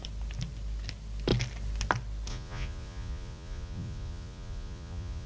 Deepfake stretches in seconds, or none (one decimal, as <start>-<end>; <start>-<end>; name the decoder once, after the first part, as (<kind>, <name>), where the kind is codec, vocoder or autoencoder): 2.3-5.3 (vocoder, Vocos)